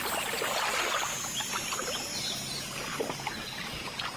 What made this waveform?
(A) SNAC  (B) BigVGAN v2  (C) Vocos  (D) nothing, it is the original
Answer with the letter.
D